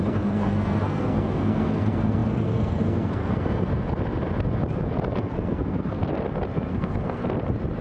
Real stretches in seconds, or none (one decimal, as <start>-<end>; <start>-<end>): 3.7-5.2; 6.0-6.7; 7.2-7.8